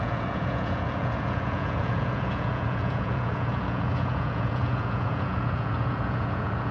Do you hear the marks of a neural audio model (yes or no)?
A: yes